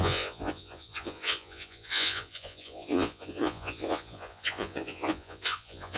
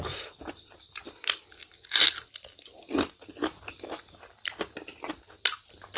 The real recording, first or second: second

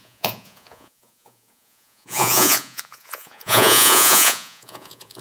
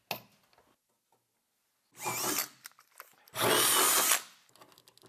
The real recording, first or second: second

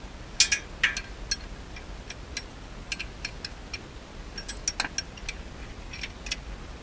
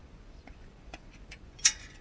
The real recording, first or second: first